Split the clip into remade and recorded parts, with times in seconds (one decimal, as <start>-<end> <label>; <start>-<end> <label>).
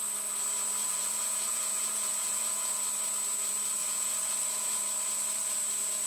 0.0-0.8 recorded; 0.8-2.8 remade; 2.8-3.8 recorded; 3.8-4.8 remade; 4.8-6.1 recorded